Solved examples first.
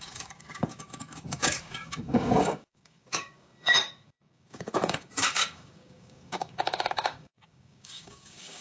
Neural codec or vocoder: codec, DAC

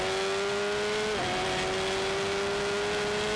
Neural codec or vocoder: none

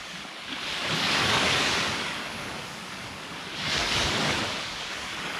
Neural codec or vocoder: codec, DAC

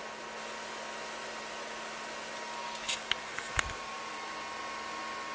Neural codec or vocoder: none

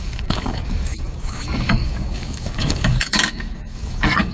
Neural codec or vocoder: codec, DAC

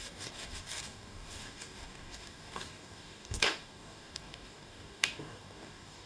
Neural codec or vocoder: codec, DAC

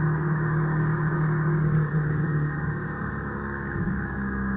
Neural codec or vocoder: codec, DAC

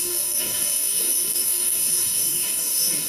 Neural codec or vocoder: codec, DAC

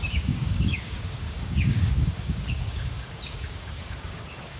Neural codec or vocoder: codec, DAC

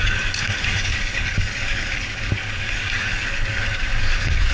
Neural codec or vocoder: codec, DAC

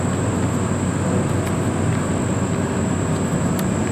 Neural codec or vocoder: none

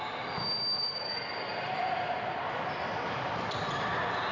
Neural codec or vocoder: none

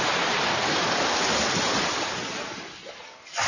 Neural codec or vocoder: none